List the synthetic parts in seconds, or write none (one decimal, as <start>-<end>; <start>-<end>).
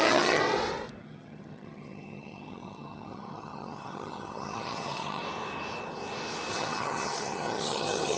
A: 0.0-0.4; 1.0-5.2; 6.5-8.2